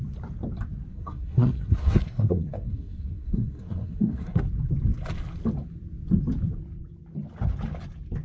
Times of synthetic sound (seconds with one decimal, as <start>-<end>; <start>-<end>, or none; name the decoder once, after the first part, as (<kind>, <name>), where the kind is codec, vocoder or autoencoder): 0.9-4.4 (codec, SNAC)